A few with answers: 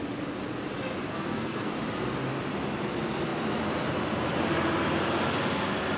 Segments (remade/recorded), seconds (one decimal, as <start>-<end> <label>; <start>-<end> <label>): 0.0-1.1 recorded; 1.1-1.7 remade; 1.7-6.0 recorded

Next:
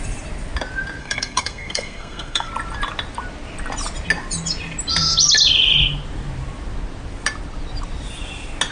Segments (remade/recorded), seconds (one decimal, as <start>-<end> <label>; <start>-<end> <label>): 0.0-1.0 recorded; 1.0-2.5 remade; 2.5-8.7 recorded

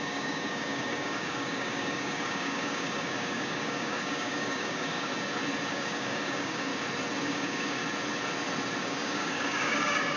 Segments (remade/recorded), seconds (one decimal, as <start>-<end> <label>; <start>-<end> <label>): 0.0-5.1 remade; 5.1-5.7 recorded; 5.7-6.7 remade; 6.7-7.2 recorded; 7.2-7.8 remade; 7.8-8.8 recorded; 8.8-10.2 remade

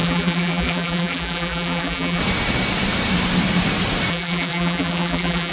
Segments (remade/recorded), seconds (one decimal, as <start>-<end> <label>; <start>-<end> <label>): 0.0-2.2 remade; 2.2-4.1 recorded; 4.1-5.5 remade

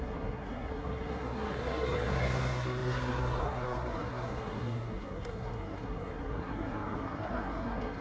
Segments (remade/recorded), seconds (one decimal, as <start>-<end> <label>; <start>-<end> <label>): 0.0-8.0 remade

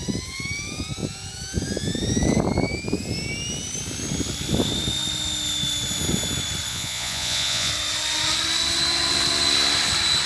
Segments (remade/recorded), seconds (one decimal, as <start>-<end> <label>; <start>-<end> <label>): 0.0-6.7 recorded; 6.7-7.7 remade; 7.7-10.3 recorded

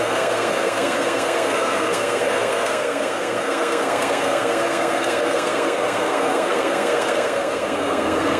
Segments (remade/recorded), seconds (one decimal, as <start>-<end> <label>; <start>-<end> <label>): 0.0-8.4 remade